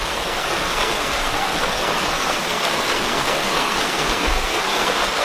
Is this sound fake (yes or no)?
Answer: yes